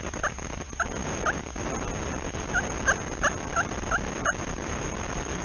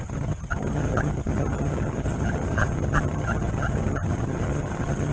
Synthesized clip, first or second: second